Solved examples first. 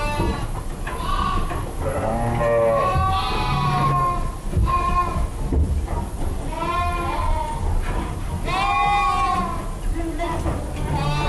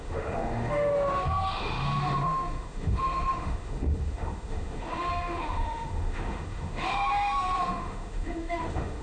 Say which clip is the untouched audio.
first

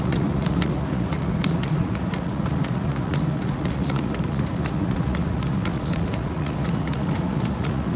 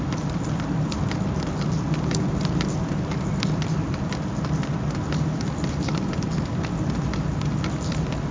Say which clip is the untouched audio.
second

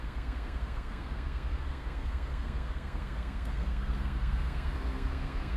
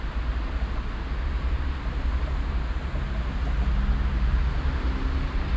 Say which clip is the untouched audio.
second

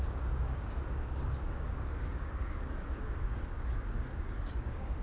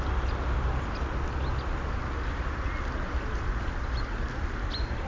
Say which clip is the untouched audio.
second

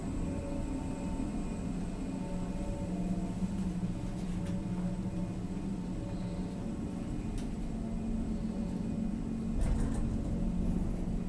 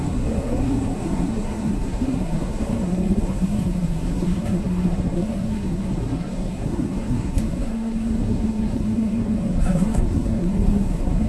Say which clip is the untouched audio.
first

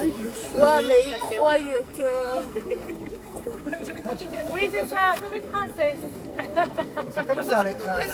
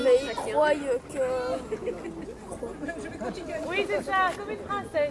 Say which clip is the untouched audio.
second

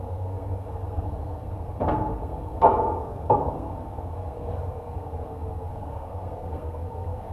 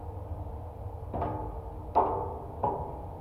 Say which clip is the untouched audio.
second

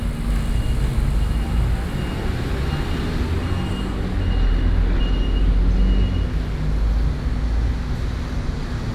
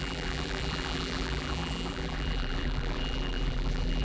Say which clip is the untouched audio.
first